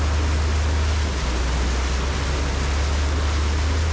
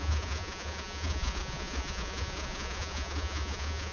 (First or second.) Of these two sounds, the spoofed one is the second